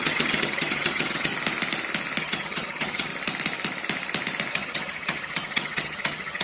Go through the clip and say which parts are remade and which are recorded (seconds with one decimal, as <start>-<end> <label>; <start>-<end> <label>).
0.0-1.3 remade; 1.3-2.2 recorded; 2.2-3.1 remade; 3.1-4.5 recorded; 4.5-6.4 remade